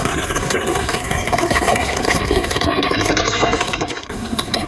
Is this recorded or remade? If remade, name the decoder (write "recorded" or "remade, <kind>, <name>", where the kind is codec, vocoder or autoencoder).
remade, codec, SNAC